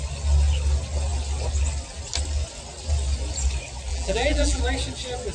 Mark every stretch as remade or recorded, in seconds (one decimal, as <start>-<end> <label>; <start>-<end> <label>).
0.0-3.9 recorded; 3.9-4.6 remade; 4.6-5.3 recorded